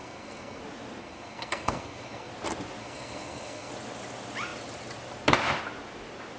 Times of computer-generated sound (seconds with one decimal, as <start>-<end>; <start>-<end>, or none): 0.0-0.6; 1.0-2.3; 2.8-3.7

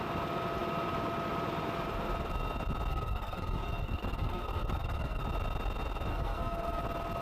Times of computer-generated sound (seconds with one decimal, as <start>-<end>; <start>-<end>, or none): 2.9-5.2; 6.1-6.8